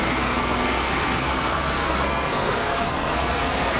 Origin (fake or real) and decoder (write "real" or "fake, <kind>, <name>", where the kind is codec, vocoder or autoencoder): fake, codec, SNAC